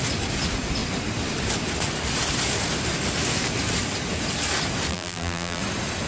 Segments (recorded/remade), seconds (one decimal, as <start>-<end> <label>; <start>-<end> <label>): 0.0-4.9 recorded; 4.9-5.6 remade; 5.6-6.1 recorded